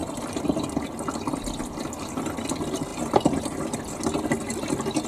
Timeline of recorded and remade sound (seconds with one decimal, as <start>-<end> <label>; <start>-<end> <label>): 0.0-2.9 recorded; 2.9-3.8 remade; 3.8-5.1 recorded